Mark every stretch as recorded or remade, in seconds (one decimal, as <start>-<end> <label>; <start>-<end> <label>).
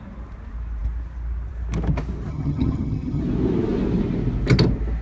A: 0.0-2.3 recorded; 2.3-3.2 remade; 3.2-5.0 recorded